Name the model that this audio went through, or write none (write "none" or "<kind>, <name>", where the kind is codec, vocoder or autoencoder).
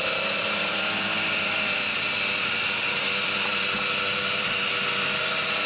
none